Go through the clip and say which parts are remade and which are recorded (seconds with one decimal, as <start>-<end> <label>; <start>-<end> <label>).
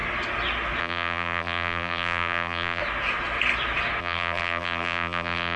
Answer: 0.0-0.8 recorded; 0.8-2.8 remade; 2.8-4.0 recorded; 4.0-5.6 remade